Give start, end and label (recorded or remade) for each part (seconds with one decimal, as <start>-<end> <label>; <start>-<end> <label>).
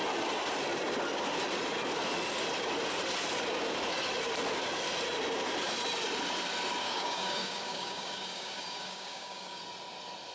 0.0-6.8 recorded; 6.8-9.6 remade; 9.6-10.3 recorded